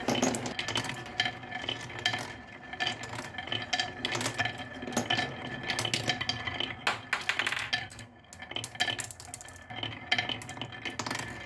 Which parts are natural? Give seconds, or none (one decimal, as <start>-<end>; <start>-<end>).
0.0-7.8; 8.3-11.5